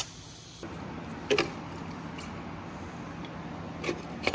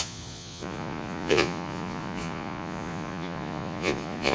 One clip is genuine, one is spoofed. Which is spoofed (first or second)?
second